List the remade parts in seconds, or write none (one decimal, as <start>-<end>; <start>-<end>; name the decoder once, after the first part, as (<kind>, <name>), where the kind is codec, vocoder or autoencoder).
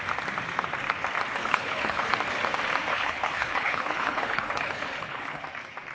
1.4-2.1 (codec, HILCodec); 2.9-5.4